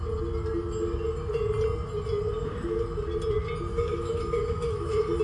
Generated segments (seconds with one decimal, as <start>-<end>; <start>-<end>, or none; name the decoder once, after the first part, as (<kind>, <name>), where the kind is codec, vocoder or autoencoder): 3.7-5.2 (autoencoder, DAC-VAE)